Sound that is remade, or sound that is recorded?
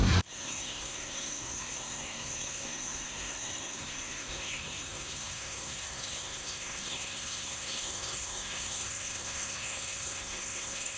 remade